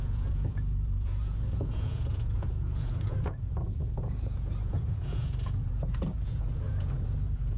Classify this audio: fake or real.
fake